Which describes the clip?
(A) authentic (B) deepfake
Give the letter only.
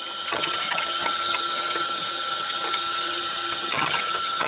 B